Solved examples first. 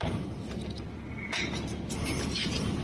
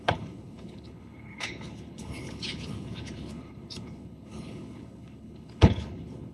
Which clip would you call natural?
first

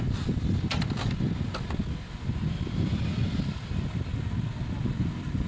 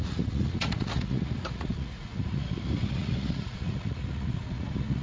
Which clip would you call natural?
first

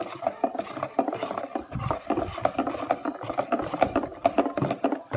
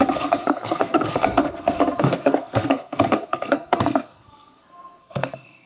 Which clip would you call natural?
first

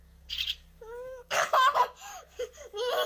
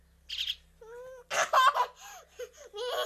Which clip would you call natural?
second